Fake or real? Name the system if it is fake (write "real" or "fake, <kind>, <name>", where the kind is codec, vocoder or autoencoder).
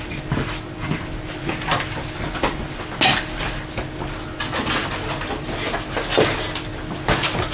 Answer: real